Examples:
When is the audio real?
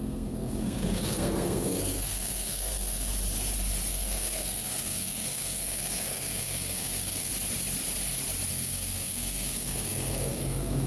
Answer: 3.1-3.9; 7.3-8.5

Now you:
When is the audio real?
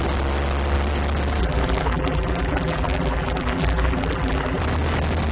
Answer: 0.0-1.4; 4.6-5.3